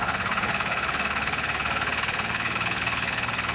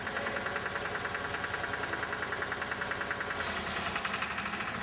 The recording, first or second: second